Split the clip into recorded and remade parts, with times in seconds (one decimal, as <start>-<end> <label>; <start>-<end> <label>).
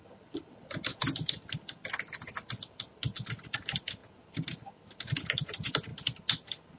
0.0-6.8 recorded